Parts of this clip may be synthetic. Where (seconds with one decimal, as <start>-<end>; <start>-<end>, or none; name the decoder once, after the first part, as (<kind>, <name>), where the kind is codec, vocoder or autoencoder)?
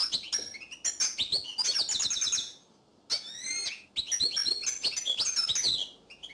none